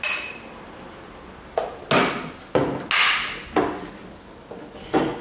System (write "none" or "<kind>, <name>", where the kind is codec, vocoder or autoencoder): none